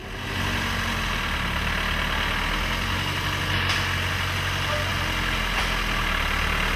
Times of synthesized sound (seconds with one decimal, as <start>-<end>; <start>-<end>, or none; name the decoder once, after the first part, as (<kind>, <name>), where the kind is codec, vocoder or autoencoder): none